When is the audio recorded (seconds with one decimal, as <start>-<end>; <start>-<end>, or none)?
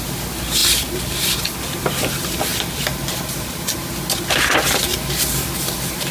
0.0-6.1